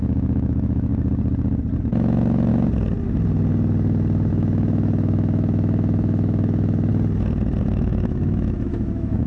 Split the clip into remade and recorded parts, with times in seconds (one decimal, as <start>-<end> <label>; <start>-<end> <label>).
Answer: 0.0-0.9 remade; 0.9-1.8 recorded; 1.8-2.5 remade; 2.5-4.3 recorded; 4.3-6.9 remade; 6.9-7.6 recorded; 7.6-9.3 remade